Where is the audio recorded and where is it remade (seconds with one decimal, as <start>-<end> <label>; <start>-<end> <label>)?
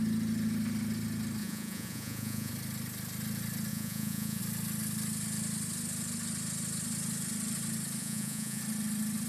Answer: 0.0-1.4 recorded; 1.4-2.5 remade; 2.5-3.7 recorded; 3.7-4.4 remade; 4.4-8.0 recorded; 8.0-8.6 remade; 8.6-9.3 recorded